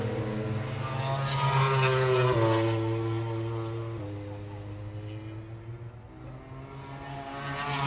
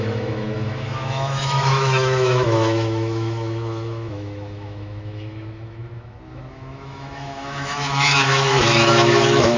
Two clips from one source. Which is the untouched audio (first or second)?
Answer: first